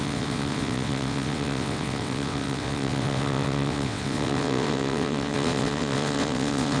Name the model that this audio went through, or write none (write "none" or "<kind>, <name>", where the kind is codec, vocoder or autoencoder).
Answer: vocoder, WaveNeXt